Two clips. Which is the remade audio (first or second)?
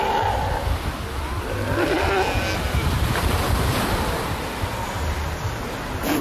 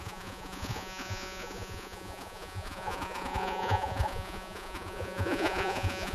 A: second